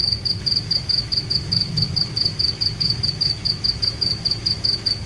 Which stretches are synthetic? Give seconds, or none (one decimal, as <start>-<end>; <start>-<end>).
0.0-5.1